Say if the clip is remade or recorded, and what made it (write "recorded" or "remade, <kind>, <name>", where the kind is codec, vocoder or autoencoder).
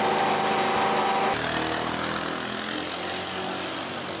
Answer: recorded